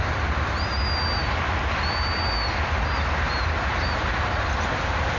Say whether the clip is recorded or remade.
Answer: recorded